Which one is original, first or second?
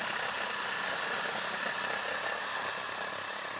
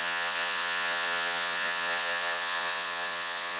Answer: first